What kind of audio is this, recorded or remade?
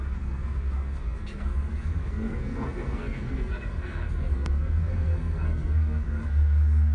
remade